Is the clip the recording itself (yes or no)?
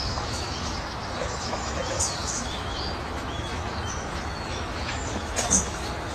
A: no